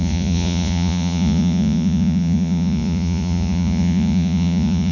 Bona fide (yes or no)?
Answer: no